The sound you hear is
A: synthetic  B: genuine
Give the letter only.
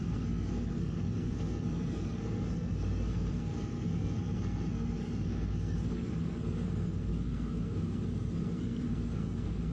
A